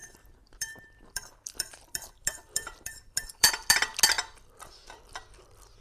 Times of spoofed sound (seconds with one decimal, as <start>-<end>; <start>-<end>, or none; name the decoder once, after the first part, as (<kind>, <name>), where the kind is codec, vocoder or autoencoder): 0.0-3.5 (vocoder, BigVGAN v2)